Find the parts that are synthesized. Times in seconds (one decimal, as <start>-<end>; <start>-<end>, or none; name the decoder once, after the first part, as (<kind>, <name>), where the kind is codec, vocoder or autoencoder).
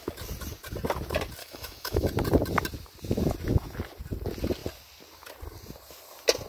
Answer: 1.4-2.1 (autoencoder, DAC-VAE)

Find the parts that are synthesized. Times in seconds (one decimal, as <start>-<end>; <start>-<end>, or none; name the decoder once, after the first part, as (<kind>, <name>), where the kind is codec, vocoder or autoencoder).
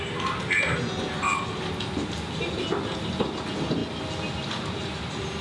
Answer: 3.8-4.9 (vocoder, BigVGAN v2)